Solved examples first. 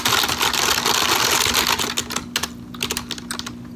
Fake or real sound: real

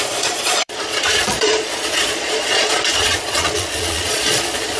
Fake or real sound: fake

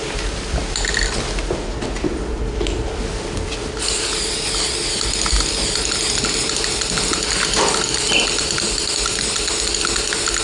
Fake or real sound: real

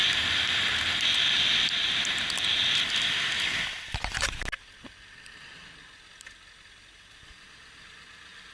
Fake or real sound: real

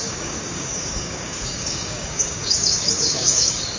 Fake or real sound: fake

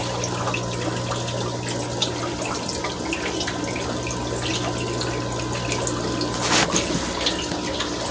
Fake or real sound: real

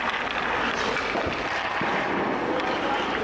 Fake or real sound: real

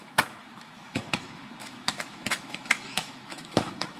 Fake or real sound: fake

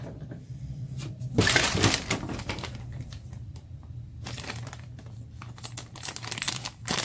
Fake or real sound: fake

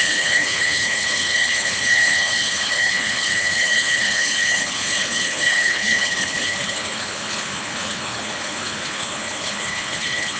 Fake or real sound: fake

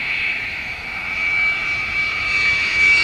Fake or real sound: fake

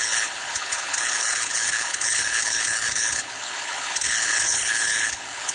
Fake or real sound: fake